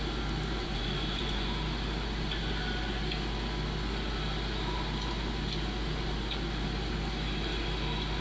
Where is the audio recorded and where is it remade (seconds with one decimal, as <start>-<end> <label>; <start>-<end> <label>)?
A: 0.0-0.6 recorded; 0.6-1.5 remade; 1.5-8.2 recorded